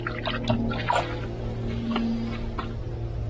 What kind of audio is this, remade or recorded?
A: recorded